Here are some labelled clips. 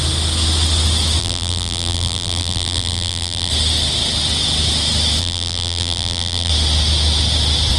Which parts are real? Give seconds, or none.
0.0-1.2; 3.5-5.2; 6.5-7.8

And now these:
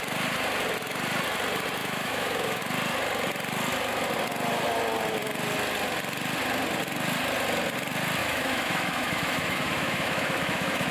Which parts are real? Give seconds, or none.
0.0-1.8; 2.6-8.2

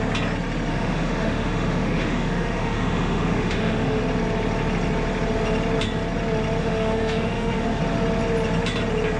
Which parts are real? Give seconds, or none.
0.0-0.7; 4.0-6.6; 7.8-9.2